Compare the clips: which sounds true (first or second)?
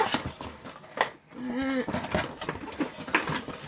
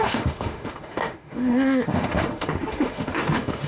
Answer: first